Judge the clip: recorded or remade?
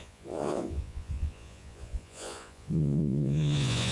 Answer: remade